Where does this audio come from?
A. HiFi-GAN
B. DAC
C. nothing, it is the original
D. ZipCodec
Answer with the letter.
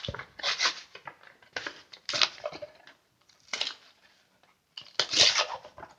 C